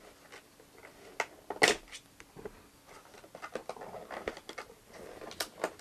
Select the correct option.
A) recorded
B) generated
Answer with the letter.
A